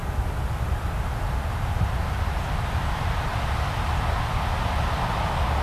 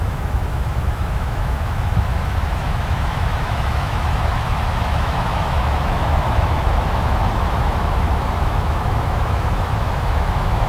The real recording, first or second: first